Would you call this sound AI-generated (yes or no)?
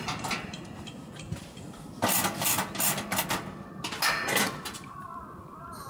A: no